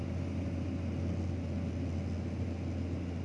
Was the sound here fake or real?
real